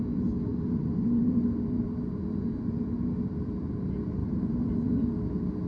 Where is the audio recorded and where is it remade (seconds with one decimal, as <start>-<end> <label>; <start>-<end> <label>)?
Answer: 0.0-0.5 recorded; 0.5-3.5 remade; 3.5-4.2 recorded; 4.2-4.9 remade; 4.9-5.7 recorded